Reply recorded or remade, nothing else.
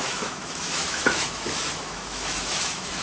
remade